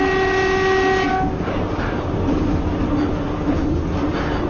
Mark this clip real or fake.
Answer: real